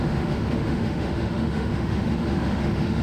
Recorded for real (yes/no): no